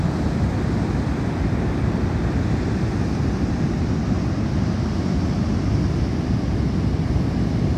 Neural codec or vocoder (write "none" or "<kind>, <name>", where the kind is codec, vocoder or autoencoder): none